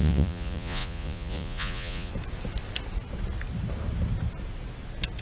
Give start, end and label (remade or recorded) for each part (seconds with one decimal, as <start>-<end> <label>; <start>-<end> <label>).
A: 0.0-2.1 remade; 2.1-5.2 recorded